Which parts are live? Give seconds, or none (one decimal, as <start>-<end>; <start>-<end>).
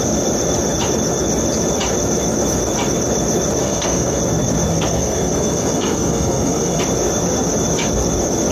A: 0.0-3.6; 4.2-4.7; 6.8-8.5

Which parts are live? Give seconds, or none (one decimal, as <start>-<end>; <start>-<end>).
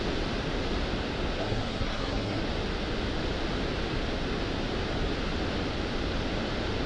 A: 0.0-1.4; 2.4-6.9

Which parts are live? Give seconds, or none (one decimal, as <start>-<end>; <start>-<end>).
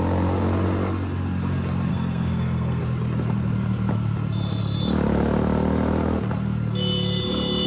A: 0.0-1.9; 2.8-7.7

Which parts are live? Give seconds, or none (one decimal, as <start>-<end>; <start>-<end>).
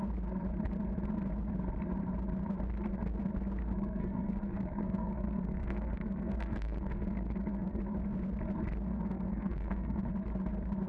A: 0.0-3.6; 7.8-8.9; 10.1-10.9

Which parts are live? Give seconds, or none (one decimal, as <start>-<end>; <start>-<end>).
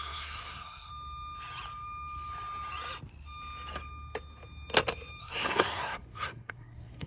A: 0.9-5.2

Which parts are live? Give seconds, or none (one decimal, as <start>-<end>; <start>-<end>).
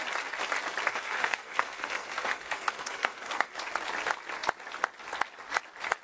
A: 0.0-0.9; 3.5-6.0